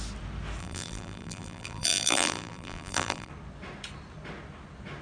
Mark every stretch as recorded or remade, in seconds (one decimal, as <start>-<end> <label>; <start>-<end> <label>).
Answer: 0.0-0.6 recorded; 0.6-3.3 remade; 3.3-5.0 recorded